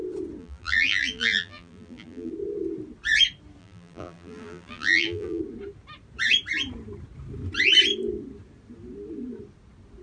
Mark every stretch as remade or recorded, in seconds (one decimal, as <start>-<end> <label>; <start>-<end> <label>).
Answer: 0.0-0.4 recorded; 0.4-2.3 remade; 2.3-3.6 recorded; 3.6-5.4 remade; 5.4-10.0 recorded